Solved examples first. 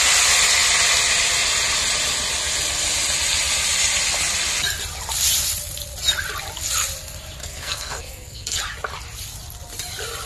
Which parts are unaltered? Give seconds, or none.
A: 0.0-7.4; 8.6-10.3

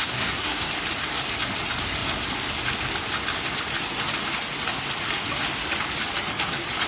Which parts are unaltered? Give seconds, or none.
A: 0.7-6.9

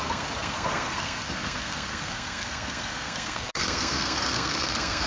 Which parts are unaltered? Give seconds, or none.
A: none

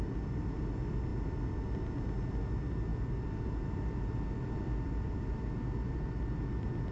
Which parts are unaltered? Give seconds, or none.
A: 0.0-6.9